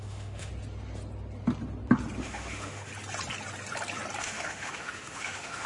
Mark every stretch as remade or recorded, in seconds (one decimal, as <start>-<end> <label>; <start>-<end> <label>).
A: 0.0-0.5 remade; 0.5-2.2 recorded; 2.2-2.9 remade; 2.9-4.2 recorded; 4.2-5.7 remade

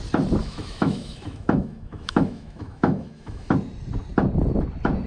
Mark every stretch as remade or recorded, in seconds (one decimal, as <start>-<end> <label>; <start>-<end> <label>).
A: 0.0-0.4 recorded; 0.4-3.5 remade; 3.5-5.1 recorded

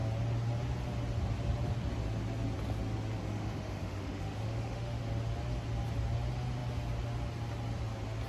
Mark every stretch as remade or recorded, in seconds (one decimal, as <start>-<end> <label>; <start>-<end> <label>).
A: 0.0-3.2 recorded; 3.2-5.0 remade; 5.0-8.3 recorded

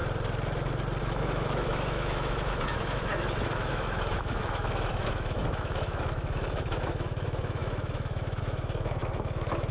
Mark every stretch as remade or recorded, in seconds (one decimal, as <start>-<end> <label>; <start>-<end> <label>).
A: 0.0-1.0 recorded; 1.0-9.7 remade

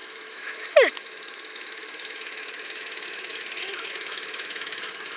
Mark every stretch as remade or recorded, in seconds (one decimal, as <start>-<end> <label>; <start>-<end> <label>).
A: 0.0-5.2 remade

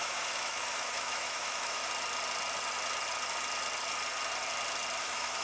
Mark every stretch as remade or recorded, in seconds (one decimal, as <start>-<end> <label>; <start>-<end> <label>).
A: 0.0-1.8 remade; 1.8-5.0 recorded; 5.0-5.4 remade

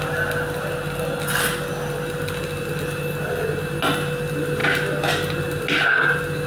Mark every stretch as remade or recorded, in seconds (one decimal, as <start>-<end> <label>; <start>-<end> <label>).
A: 0.0-6.5 recorded